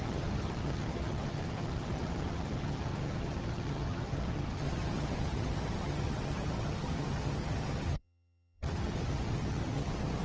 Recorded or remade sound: remade